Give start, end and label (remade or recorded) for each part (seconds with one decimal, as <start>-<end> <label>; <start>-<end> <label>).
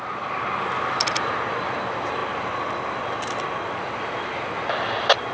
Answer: 0.0-5.3 recorded